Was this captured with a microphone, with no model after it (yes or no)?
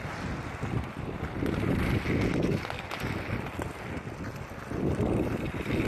yes